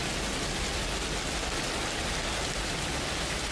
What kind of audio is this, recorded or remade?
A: recorded